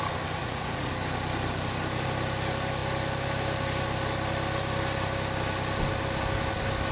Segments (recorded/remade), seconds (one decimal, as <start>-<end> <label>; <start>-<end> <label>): 0.0-0.4 recorded; 0.4-0.9 remade; 0.9-6.9 recorded